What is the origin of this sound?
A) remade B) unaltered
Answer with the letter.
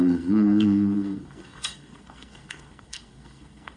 A